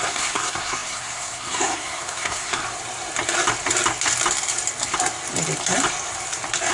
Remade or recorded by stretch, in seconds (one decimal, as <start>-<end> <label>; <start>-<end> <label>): 0.0-2.6 remade; 2.6-6.7 recorded